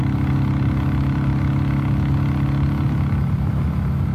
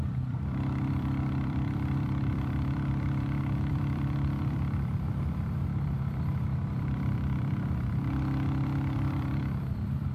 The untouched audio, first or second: first